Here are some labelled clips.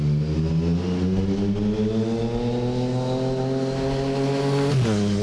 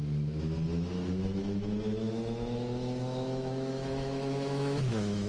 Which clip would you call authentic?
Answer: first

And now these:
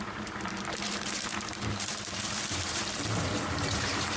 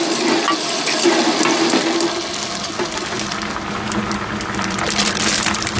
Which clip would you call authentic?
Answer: second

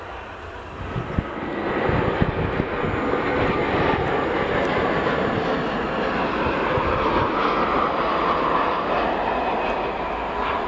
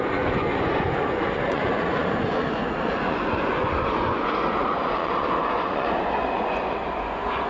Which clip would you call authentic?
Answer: first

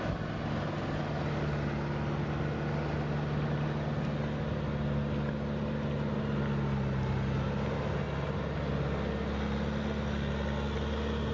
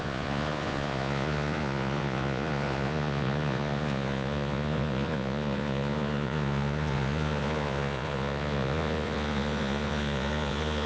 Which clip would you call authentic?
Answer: first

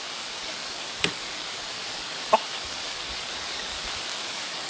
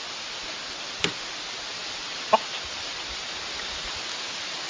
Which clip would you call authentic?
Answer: second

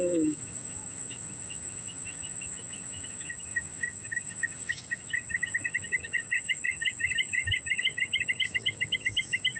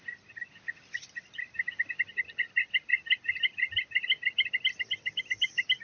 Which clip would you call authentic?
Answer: second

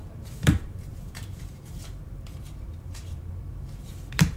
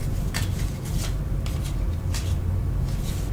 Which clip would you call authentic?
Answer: second